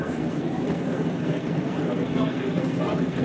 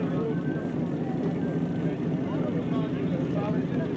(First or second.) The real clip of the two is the second